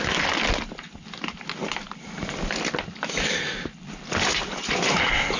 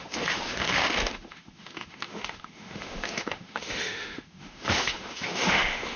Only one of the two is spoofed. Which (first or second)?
second